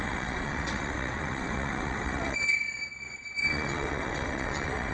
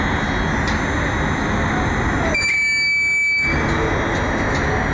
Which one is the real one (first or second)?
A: second